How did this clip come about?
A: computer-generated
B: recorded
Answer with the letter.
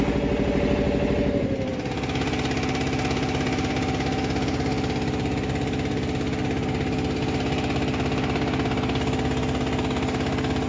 B